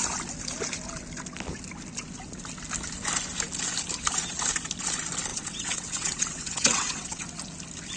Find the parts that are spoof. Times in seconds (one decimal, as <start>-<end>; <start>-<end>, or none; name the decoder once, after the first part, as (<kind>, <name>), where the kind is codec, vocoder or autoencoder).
5.3-7.2 (vocoder, WaveNeXt)